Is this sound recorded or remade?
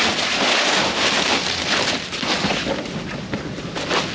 recorded